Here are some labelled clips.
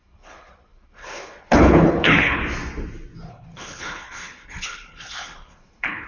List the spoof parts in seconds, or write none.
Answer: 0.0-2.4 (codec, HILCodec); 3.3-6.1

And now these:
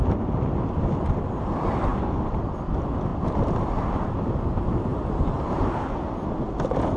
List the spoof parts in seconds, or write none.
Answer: 1.9-2.4 (vocoder, BigVGAN v2); 4.9-5.8